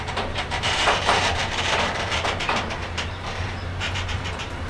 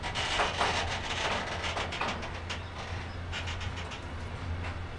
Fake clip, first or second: first